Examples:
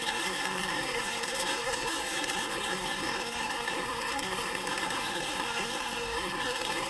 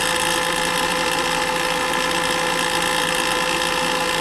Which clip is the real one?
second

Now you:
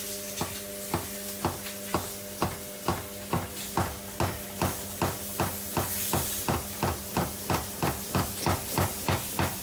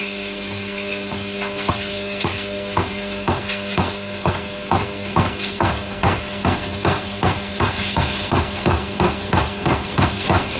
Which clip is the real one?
first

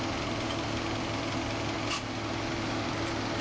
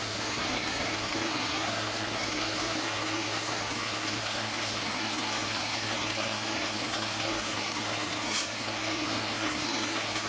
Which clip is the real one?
first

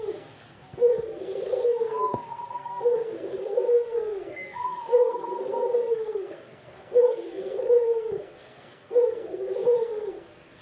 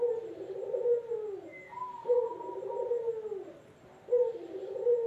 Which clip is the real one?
second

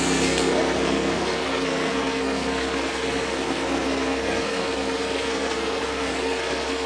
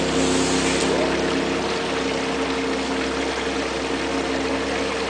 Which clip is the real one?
second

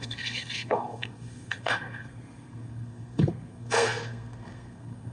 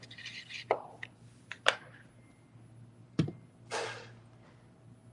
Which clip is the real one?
second